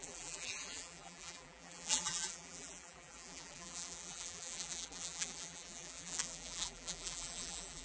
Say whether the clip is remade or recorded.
remade